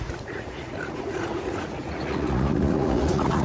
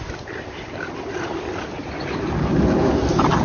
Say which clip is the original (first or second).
second